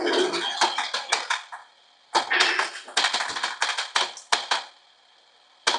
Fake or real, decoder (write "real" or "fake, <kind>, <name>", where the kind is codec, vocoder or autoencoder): real